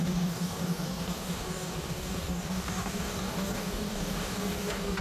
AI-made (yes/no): yes